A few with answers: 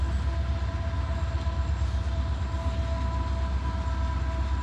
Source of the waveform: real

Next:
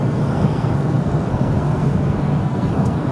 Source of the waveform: fake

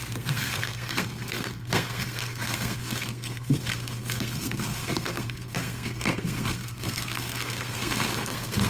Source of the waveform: fake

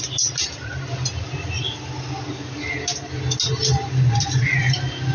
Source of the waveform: real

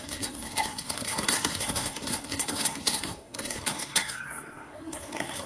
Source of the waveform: fake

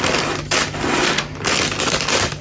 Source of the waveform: real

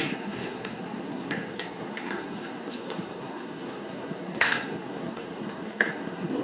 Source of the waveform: fake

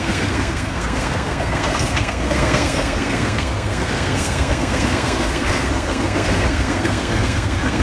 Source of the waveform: fake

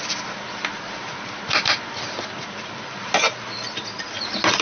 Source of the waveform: real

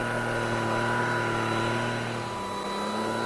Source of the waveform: real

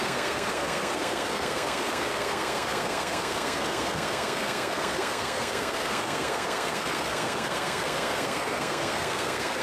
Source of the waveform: fake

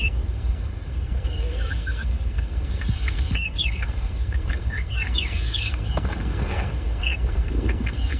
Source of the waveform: fake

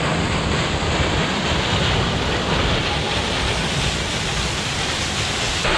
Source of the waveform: real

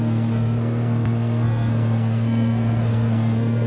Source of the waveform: fake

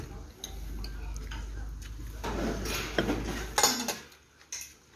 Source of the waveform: real